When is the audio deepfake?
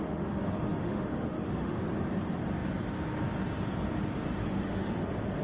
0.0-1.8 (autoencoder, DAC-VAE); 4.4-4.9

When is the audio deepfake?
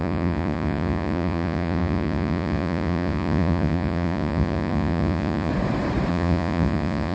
0.0-5.5 (vocoder, Vocos); 6.1-7.1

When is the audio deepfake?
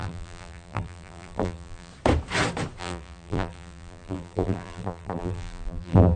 0.0-1.9 (vocoder, BigVGAN v2); 2.8-6.2